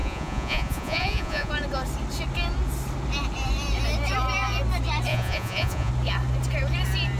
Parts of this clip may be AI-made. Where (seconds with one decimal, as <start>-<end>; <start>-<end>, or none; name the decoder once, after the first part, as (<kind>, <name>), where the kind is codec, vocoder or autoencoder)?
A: 0.0-1.5 (vocoder, Vocos); 5.1-5.9

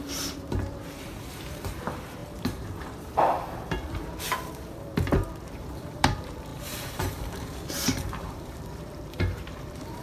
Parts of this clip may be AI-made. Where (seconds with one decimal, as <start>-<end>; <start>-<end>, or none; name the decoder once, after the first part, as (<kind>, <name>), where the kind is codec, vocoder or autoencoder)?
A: 0.0-10.0 (vocoder, BigVGAN v2)

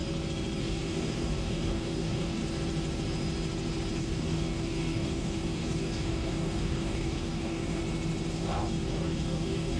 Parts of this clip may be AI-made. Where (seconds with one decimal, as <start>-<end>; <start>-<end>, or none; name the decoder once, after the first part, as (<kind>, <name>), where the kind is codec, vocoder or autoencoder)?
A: 0.6-2.4 (codec, DAC); 4.0-7.8; 8.3-9.8

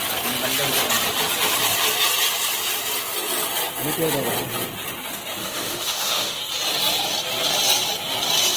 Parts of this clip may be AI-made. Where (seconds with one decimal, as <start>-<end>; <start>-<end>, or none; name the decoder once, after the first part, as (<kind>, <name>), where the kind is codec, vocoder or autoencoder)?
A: 5.4-6.4 (autoencoder, DAC-VAE)

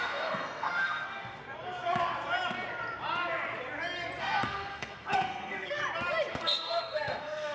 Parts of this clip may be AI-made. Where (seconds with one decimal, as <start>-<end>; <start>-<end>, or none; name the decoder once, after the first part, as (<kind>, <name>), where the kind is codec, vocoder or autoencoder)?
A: 0.0-1.4 (codec, SNAC); 4.2-5.8; 6.3-7.5

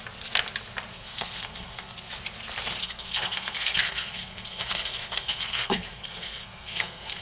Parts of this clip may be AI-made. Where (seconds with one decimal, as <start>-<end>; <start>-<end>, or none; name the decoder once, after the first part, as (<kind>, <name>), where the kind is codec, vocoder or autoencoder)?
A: 0.9-2.1 (codec, SNAC); 2.8-7.2

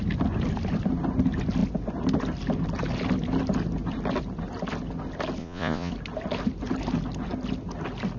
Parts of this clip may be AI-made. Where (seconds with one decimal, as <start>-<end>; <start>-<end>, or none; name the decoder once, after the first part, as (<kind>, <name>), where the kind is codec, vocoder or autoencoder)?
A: 5.4-5.9 (vocoder, Vocos)